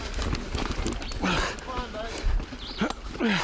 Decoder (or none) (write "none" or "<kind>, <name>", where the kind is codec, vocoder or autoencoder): none